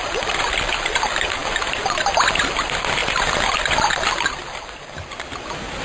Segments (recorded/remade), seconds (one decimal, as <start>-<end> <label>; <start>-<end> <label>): 0.0-5.8 recorded